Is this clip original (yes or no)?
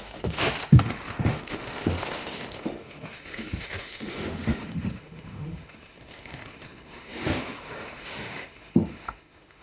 no